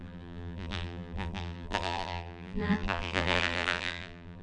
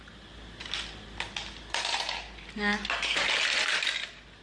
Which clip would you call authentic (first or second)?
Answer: second